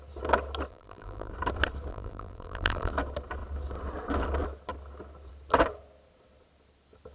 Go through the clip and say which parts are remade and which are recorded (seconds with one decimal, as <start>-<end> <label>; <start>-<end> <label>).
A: 0.0-0.7 recorded; 0.7-1.3 remade; 1.3-1.9 recorded; 1.9-2.9 remade; 2.9-7.1 recorded